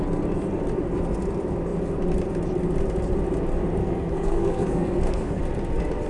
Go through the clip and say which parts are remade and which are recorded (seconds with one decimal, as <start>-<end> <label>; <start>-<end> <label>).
0.0-3.8 recorded; 3.8-5.4 remade; 5.4-6.1 recorded